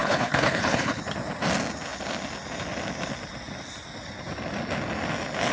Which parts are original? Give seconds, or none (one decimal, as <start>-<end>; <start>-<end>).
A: 1.0-5.5